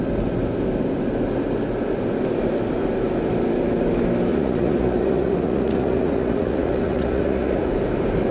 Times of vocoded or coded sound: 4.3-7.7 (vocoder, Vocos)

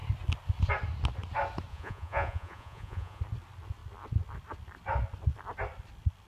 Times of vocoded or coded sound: 1.7-3.2 (vocoder, Vocos)

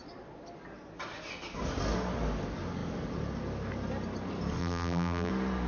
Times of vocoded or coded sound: 4.6-5.3 (vocoder, BigVGAN v2)

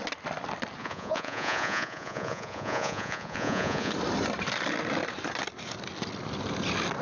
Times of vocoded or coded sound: 0.8-3.9 (vocoder, Vocos)